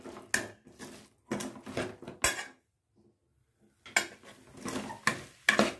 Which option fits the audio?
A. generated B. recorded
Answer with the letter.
B